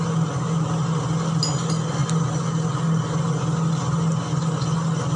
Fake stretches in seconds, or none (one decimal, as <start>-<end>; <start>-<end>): none